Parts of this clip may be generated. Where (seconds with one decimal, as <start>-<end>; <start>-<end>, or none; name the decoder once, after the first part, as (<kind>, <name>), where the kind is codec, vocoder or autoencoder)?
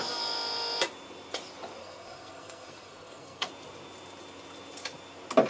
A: 1.8-3.5 (codec, SNAC)